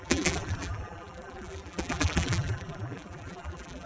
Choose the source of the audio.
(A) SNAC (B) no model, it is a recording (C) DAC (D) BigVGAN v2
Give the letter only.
D